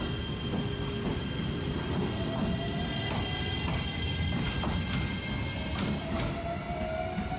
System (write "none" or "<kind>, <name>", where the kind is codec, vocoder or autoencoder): none